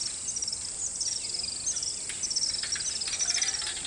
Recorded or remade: recorded